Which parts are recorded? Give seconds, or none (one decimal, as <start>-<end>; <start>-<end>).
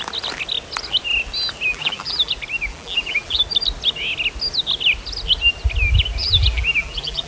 0.0-1.7; 2.3-2.7; 3.4-6.2